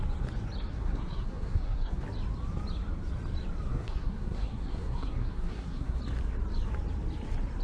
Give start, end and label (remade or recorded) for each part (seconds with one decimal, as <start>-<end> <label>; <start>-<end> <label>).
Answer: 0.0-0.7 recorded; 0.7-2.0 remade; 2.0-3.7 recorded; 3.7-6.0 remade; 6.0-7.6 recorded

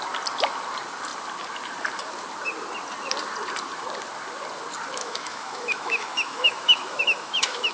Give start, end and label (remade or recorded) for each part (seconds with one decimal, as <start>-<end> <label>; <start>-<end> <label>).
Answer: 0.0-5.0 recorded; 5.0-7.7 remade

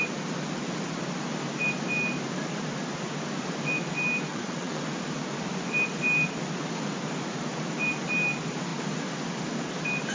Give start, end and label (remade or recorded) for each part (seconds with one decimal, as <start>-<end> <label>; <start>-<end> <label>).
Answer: 0.0-4.3 recorded; 4.3-4.8 remade; 4.8-10.1 recorded

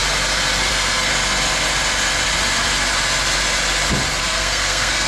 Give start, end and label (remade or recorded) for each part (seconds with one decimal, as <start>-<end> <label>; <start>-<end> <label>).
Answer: 0.0-0.7 recorded; 0.7-1.1 remade; 1.1-4.2 recorded; 4.2-5.1 remade

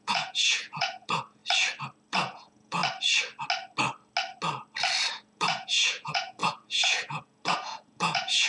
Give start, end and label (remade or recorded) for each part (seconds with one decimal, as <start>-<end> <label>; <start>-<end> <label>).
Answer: 0.0-1.4 remade; 1.4-2.1 recorded; 2.1-2.8 remade; 2.8-5.1 recorded; 5.1-8.5 remade

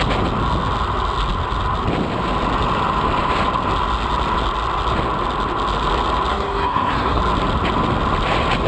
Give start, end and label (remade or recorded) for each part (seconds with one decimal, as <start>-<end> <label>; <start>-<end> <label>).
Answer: 0.0-6.3 recorded; 6.3-7.2 remade; 7.2-8.7 recorded

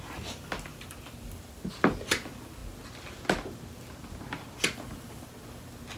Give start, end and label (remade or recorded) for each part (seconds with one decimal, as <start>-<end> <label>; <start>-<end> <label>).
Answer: 0.0-6.0 recorded